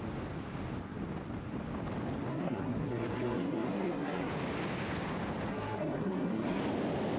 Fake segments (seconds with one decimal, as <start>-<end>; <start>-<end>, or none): 2.3-4.3; 5.5-6.6